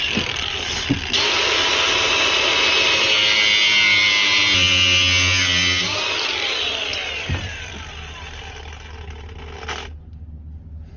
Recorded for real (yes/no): yes